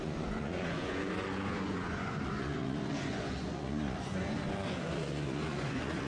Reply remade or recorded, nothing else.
remade